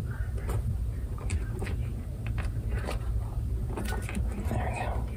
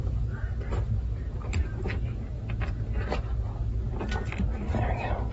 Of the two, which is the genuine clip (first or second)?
second